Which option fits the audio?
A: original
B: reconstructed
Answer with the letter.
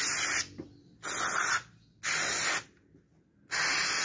A